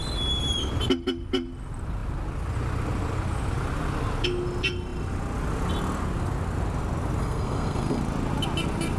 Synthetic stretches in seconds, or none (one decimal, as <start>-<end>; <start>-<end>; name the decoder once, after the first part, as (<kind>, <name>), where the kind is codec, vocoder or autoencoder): 7.2-8.0 (codec, SNAC)